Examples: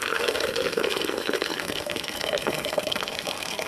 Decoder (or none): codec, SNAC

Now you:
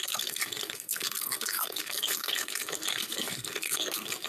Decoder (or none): codec, SNAC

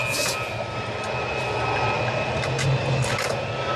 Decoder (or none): none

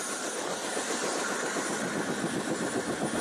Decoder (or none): none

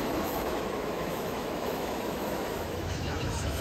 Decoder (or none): autoencoder, DAC-VAE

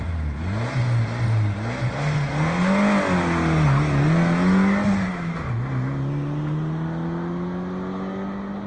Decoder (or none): none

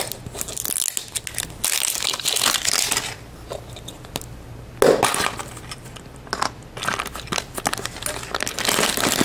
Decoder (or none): none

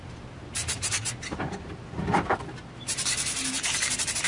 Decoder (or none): vocoder, BigVGAN v2